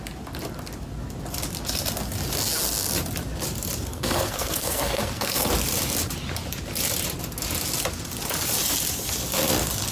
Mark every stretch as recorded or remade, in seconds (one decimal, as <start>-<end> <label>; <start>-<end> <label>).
0.0-3.9 recorded; 3.9-5.5 remade; 5.5-9.9 recorded